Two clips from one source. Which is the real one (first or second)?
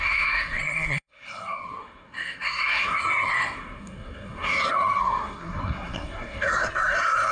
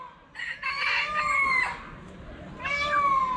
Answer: second